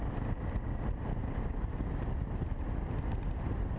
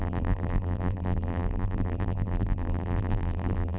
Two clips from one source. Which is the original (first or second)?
first